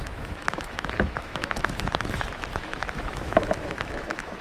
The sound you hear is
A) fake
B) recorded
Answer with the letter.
A